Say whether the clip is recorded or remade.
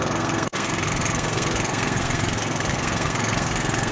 remade